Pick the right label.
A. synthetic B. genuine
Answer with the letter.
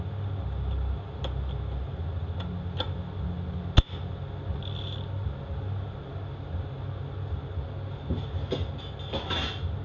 B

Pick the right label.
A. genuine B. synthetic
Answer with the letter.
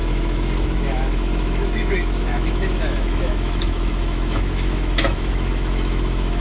B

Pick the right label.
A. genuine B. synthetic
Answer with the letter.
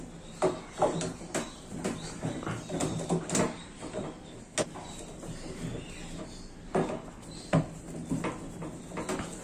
A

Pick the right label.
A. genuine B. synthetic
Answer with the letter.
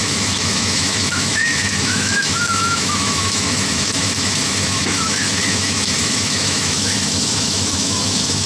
B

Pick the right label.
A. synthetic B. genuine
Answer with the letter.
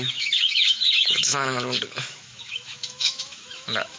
A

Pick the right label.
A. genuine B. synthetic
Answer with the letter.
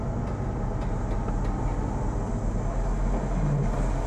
A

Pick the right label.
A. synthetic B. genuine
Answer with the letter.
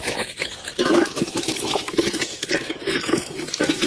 A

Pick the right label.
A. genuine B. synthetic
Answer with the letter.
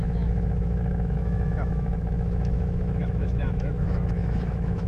B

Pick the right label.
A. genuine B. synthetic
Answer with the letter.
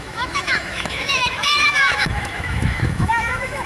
B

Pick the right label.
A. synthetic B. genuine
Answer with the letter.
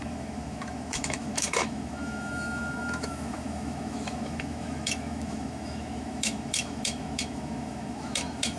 A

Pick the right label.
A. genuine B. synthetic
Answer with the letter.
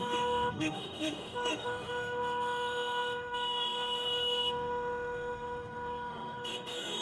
B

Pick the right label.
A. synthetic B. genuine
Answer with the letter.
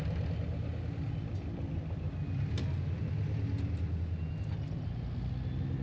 B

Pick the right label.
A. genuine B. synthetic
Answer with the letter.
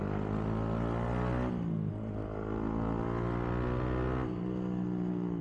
A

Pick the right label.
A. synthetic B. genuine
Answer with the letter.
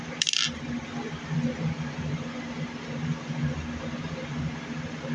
B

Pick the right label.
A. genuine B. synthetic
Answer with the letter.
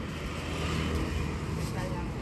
A